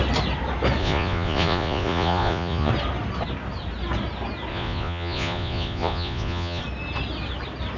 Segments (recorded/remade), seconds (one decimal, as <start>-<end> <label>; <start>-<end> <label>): 0.0-0.8 recorded; 0.8-2.7 remade; 2.7-4.5 recorded; 4.5-6.6 remade; 6.6-7.8 recorded